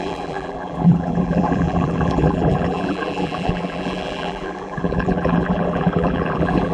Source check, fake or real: fake